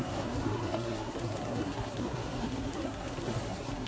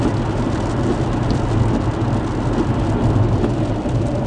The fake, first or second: first